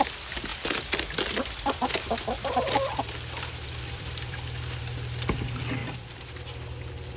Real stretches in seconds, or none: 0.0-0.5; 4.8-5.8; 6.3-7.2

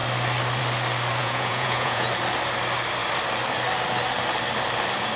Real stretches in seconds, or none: 0.0-1.2; 2.1-5.2

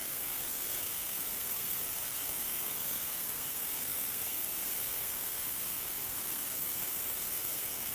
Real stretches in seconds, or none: none

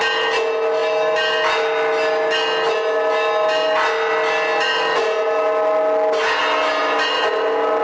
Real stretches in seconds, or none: 0.0-7.8

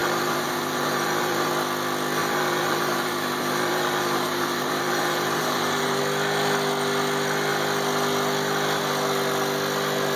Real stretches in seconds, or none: 1.5-2.2; 6.0-10.2

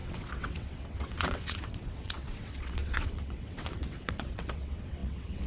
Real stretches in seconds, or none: none